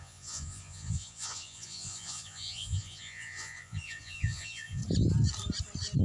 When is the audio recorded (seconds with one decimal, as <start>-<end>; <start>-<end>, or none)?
4.8-6.0